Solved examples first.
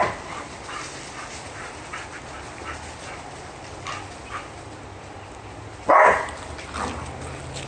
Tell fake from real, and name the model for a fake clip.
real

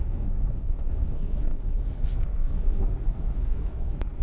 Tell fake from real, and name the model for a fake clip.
fake, codec, SNAC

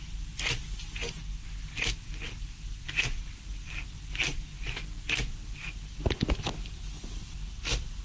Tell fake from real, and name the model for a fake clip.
real